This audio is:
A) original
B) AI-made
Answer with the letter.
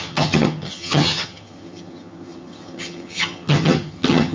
B